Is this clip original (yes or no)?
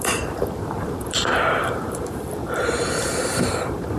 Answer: no